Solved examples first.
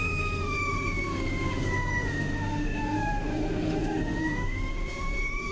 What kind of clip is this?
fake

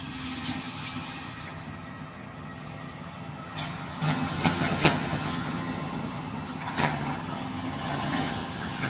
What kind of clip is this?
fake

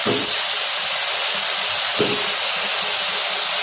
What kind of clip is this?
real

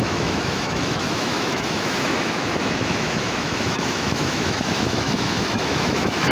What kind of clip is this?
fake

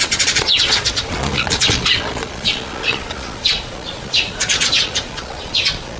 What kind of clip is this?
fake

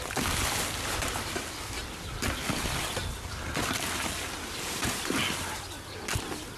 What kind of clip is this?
real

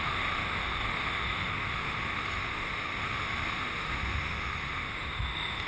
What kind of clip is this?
fake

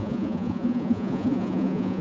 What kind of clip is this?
fake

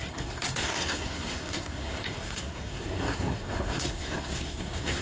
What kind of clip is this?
fake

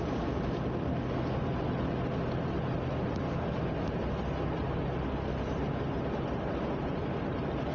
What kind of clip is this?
real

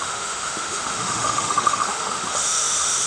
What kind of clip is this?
fake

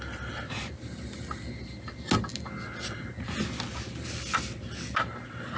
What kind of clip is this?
real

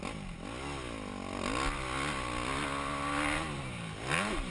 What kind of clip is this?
real